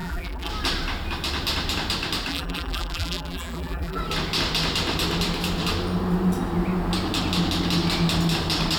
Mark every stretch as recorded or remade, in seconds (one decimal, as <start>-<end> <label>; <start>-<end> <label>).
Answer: 0.0-0.5 remade; 0.5-2.3 recorded; 2.3-4.0 remade; 4.0-8.8 recorded